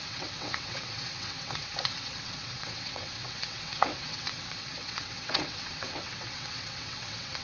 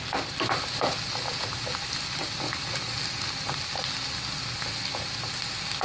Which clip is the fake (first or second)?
first